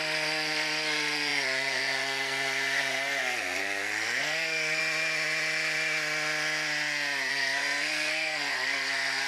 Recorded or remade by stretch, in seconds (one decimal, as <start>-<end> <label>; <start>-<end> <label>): 0.0-4.8 remade; 4.8-7.3 recorded; 7.3-9.3 remade